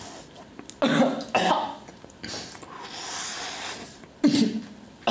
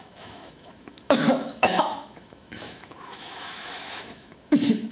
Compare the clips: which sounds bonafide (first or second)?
first